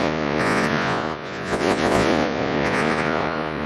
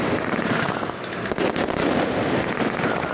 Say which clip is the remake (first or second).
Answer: first